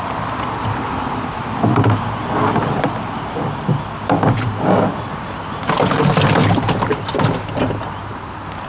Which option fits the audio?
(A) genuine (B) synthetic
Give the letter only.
A